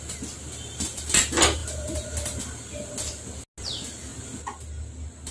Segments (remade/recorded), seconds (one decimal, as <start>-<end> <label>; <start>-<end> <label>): 0.0-5.3 recorded